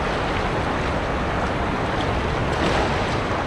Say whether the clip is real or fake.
real